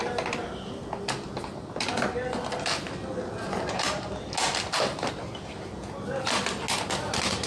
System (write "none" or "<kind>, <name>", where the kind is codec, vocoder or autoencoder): none